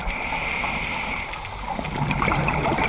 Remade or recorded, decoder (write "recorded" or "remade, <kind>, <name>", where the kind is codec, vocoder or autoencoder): recorded